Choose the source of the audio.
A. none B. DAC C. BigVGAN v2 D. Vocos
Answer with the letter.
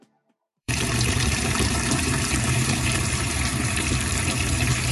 C